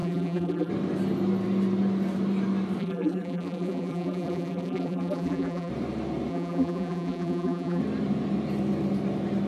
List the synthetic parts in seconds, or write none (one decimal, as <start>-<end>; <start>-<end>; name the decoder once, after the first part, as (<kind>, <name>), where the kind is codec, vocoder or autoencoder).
0.0-0.7 (vocoder, BigVGAN v2); 2.8-5.7; 6.3-7.8